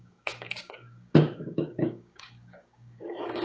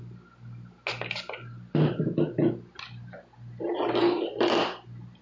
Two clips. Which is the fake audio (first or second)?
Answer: first